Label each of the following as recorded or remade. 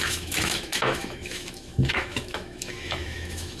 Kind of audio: remade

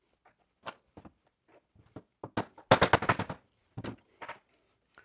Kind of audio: recorded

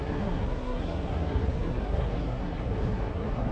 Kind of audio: remade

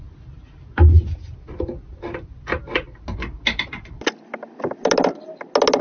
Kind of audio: recorded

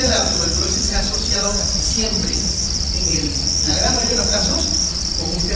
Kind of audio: remade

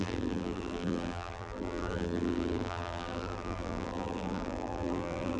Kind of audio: remade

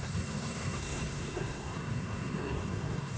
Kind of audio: remade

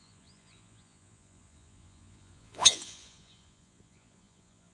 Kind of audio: remade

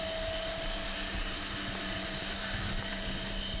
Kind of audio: recorded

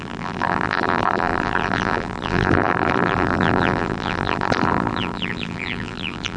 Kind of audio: remade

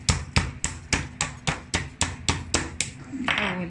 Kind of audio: recorded